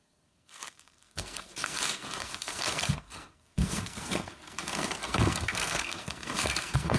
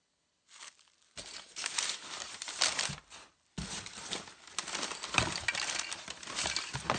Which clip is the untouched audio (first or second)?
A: second